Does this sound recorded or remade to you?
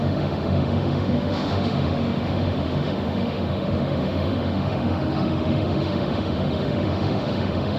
remade